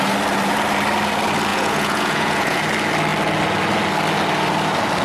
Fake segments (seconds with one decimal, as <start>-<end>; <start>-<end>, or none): 1.5-2.6